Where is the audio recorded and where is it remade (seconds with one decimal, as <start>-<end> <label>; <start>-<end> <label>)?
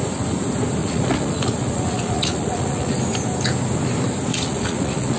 0.0-0.8 recorded; 0.8-3.0 remade; 3.0-4.3 recorded; 4.3-5.2 remade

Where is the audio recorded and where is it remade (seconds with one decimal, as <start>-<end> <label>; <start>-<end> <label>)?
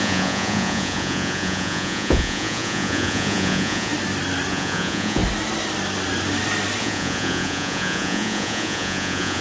0.0-3.9 remade; 3.9-4.5 recorded; 4.5-5.2 remade; 5.2-6.8 recorded; 6.8-9.4 remade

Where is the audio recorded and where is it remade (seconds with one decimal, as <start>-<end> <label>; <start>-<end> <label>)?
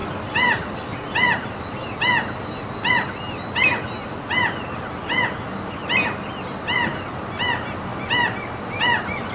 0.0-9.3 recorded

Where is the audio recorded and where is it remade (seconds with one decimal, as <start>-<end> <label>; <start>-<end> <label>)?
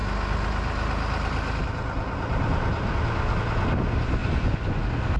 0.0-4.2 recorded; 4.2-4.8 remade; 4.8-5.2 recorded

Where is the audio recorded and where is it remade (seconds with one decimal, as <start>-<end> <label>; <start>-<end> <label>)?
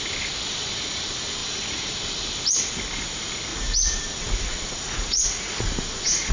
0.0-3.5 recorded; 3.5-6.3 remade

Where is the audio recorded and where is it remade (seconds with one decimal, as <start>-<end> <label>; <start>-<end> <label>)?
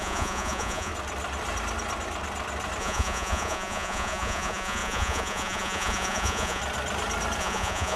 0.0-0.9 remade; 0.9-2.8 recorded; 2.8-6.6 remade; 6.6-7.4 recorded; 7.4-8.0 remade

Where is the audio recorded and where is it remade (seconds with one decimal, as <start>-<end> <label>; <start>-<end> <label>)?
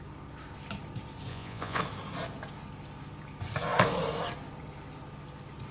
0.0-1.3 recorded; 1.3-1.8 remade; 1.8-5.7 recorded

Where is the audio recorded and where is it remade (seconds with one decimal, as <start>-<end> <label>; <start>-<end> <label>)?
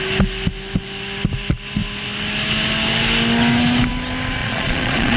0.0-4.4 recorded; 4.4-5.2 remade